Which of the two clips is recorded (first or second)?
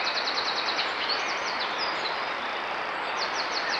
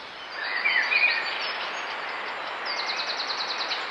second